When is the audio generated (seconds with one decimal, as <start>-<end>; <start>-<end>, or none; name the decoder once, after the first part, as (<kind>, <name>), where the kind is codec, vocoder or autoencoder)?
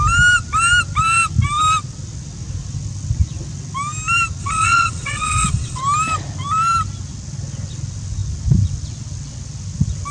4.4-5.8 (vocoder, WaveNeXt)